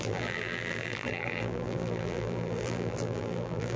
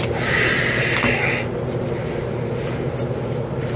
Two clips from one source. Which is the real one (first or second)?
second